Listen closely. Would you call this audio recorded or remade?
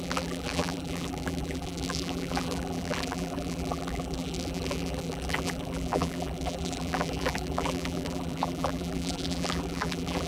remade